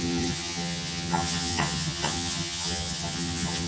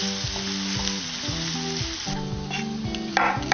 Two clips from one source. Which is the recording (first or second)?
second